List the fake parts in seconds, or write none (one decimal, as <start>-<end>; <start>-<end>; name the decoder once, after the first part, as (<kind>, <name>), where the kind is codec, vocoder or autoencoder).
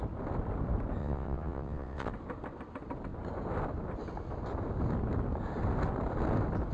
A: 1.0-2.1 (vocoder, WaveNeXt)